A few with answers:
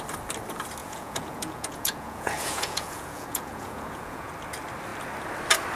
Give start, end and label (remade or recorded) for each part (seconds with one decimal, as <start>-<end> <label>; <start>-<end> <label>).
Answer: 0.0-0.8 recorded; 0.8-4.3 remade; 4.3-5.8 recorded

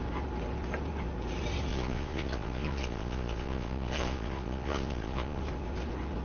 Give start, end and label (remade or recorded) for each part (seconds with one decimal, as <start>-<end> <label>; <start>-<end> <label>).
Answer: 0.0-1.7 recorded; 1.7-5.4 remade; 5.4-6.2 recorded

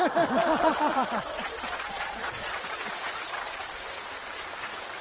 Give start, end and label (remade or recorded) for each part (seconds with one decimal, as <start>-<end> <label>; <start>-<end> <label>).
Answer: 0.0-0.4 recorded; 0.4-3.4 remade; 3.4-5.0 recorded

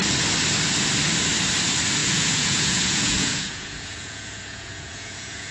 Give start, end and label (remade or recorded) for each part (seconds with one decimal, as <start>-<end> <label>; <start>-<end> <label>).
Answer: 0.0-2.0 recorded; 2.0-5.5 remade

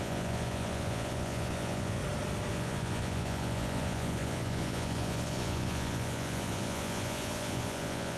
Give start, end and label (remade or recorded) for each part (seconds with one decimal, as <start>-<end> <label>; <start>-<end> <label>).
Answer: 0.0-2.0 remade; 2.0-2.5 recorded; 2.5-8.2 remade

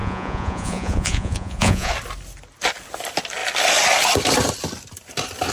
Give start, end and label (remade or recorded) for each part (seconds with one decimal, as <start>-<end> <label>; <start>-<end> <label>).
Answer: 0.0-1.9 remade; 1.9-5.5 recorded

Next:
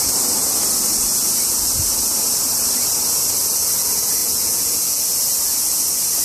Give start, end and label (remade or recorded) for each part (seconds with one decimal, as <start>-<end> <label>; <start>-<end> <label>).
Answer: 0.0-4.2 recorded; 4.2-5.0 remade; 5.0-6.2 recorded

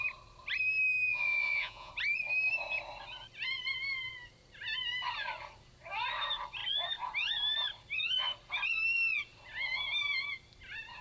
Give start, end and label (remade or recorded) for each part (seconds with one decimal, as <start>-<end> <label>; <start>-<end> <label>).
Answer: 0.0-1.1 recorded; 1.1-1.9 remade; 1.9-11.0 recorded